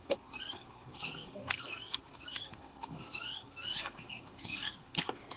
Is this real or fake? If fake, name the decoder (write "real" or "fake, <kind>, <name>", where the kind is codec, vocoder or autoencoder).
fake, codec, SNAC